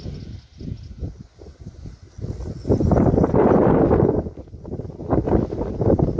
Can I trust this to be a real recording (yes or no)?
yes